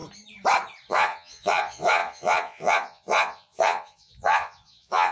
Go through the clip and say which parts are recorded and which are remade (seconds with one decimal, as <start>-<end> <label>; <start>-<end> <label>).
0.0-0.9 recorded; 0.9-5.1 remade